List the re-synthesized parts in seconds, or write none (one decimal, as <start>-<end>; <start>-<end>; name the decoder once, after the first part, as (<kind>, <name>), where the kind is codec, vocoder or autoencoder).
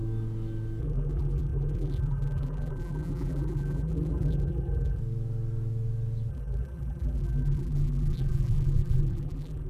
0.8-5.0 (vocoder, BigVGAN v2); 6.3-9.7